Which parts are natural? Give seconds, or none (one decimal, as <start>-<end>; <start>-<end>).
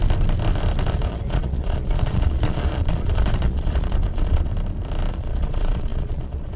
0.0-0.9; 4.5-5.1